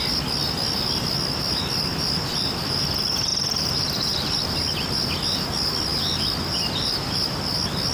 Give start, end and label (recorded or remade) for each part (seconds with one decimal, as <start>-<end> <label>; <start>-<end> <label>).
0.0-1.9 recorded; 1.9-2.8 remade; 2.8-3.3 recorded; 3.3-4.5 remade; 4.5-5.9 recorded; 5.9-7.0 remade; 7.0-7.9 recorded